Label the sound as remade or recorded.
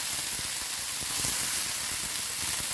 recorded